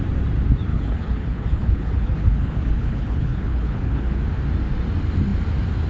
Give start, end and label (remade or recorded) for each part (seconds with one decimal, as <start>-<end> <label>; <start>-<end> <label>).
0.0-0.7 recorded; 0.7-4.2 remade; 4.2-5.9 recorded

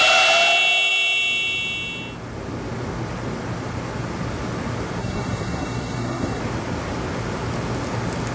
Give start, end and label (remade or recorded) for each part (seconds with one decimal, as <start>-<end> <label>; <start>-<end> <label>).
0.0-5.0 recorded; 5.0-6.4 remade; 6.4-8.3 recorded

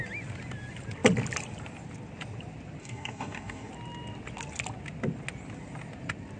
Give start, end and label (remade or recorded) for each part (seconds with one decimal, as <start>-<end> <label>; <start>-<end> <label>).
0.0-2.8 recorded; 2.8-3.7 remade; 3.7-6.4 recorded